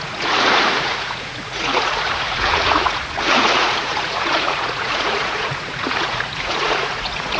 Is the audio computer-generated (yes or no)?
yes